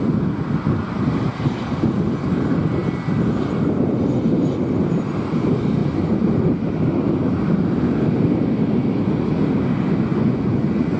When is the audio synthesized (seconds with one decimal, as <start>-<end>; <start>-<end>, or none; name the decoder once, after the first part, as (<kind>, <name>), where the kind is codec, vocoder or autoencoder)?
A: 10.1-11.0 (vocoder, Vocos)